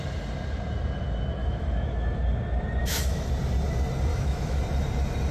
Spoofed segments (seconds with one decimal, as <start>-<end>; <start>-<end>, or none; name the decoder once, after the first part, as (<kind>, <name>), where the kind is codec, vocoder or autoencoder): 1.4-2.2 (autoencoder, DAC-VAE); 2.8-3.3; 4.1-4.6